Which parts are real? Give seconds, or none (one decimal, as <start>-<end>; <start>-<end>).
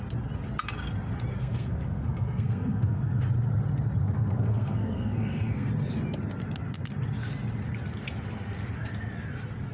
0.0-1.3; 3.2-4.0; 5.7-9.7